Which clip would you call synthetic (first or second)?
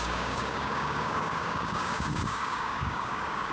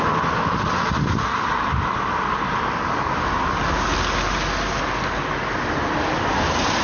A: first